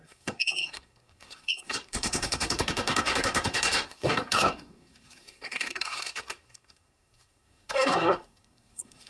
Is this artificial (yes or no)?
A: yes